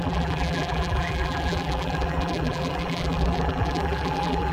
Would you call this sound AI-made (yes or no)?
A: yes